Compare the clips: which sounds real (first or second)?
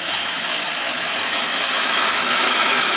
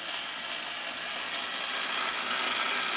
second